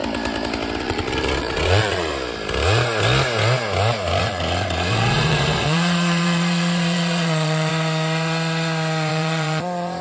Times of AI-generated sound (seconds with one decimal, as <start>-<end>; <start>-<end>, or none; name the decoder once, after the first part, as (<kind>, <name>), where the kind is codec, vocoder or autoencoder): 0.8-2.1 (vocoder, Vocos); 4.2-7.7; 9.1-10.0